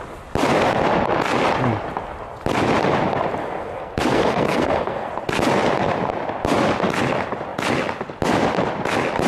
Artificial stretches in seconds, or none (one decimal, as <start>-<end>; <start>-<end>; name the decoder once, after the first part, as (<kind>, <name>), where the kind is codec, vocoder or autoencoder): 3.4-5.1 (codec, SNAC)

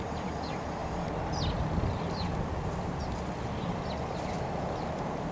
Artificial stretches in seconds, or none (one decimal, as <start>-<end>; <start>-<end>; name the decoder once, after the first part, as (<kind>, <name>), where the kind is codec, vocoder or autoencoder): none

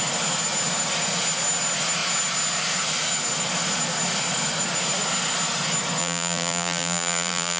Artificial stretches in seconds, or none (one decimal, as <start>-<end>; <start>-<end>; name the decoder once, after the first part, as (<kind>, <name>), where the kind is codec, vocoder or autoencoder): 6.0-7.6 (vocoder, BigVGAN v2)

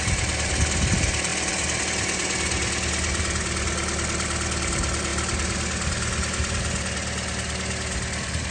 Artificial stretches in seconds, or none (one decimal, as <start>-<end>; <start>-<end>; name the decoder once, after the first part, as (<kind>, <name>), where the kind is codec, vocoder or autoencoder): none